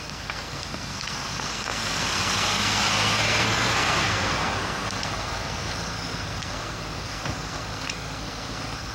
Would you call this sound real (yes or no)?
no